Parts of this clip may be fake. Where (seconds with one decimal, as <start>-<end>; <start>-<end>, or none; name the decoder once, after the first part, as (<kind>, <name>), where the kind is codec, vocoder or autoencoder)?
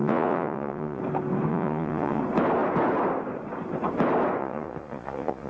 0.0-1.0 (vocoder, Vocos); 1.5-2.2; 4.4-5.5